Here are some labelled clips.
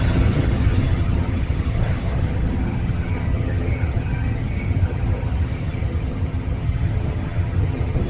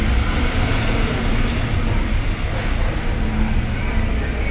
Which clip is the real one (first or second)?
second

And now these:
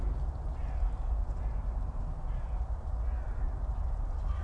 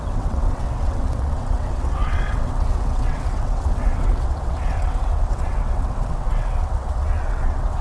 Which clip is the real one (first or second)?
first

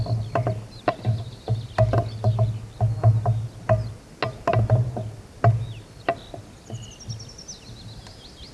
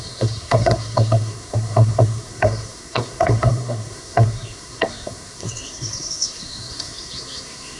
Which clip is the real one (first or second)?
first